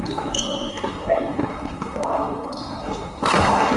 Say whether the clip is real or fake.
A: fake